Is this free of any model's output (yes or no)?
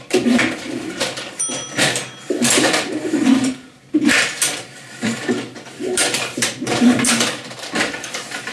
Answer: no